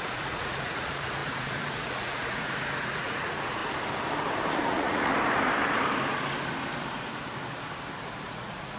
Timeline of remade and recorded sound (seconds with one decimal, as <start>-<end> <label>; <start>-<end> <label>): 0.0-3.6 remade; 3.6-4.5 recorded; 4.5-5.1 remade; 5.1-8.4 recorded; 8.4-8.8 remade